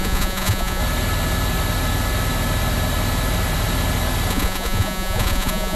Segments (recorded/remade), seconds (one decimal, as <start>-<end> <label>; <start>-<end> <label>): 0.0-0.8 remade; 0.8-4.3 recorded; 4.3-5.8 remade